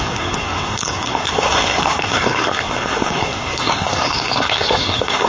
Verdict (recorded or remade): remade